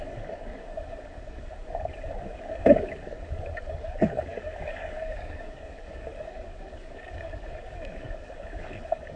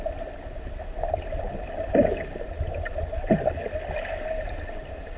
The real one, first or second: second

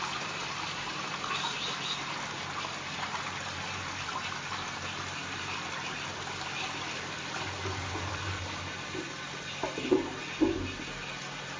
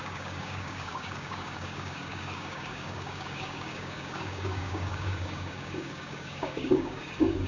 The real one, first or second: first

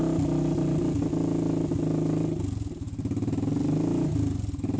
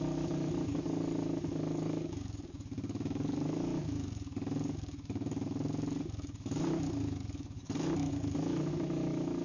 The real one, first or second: first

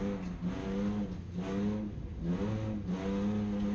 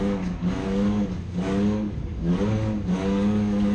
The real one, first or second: first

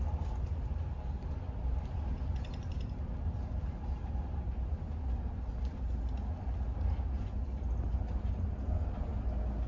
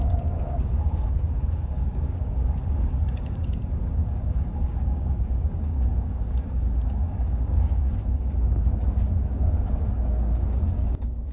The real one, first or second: first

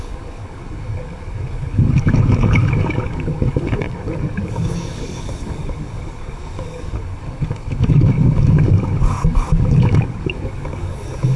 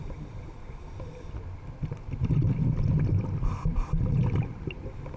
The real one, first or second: second